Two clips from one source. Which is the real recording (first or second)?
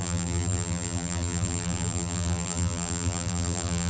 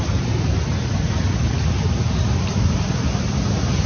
second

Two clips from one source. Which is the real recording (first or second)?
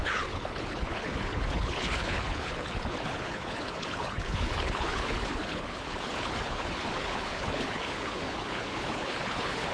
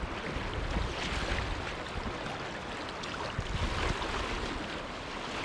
second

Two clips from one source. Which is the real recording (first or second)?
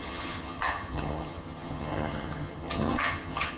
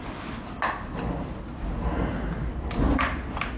second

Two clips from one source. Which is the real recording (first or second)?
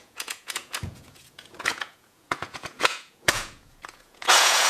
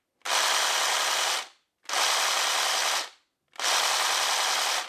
second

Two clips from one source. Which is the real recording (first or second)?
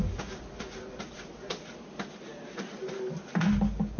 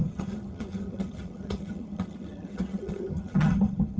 first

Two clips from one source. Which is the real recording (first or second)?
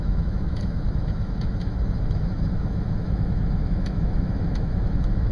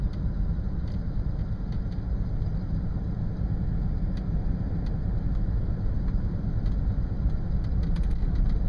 second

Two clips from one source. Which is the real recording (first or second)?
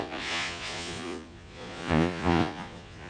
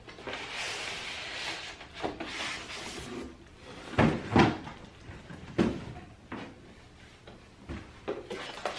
second